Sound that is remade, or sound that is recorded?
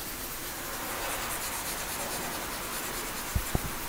recorded